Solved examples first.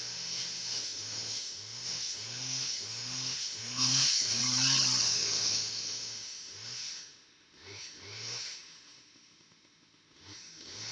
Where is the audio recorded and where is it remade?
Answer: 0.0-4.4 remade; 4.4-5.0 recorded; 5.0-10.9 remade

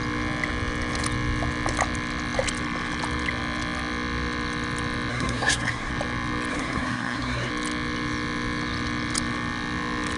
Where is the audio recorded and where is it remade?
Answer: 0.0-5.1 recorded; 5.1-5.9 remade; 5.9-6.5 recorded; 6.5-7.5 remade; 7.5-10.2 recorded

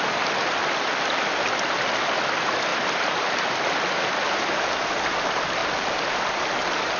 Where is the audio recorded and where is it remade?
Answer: 0.0-2.7 recorded; 2.7-3.4 remade; 3.4-7.0 recorded